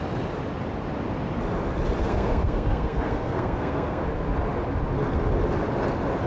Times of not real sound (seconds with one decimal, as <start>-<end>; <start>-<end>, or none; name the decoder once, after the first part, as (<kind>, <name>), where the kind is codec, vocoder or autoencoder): 2.0-4.0 (codec, SNAC)